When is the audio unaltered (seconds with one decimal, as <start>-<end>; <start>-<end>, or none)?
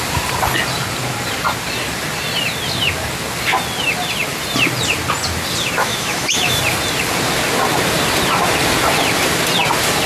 0.0-5.8; 6.6-10.1